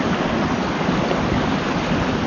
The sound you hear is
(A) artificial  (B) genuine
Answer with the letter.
B